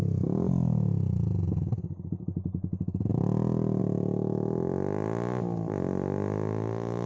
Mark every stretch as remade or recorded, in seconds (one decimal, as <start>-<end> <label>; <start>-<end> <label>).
0.0-7.1 recorded

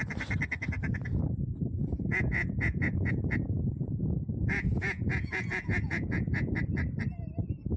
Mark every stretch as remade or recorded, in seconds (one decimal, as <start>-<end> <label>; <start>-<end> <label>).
0.0-1.8 recorded; 1.8-6.5 remade; 6.5-7.8 recorded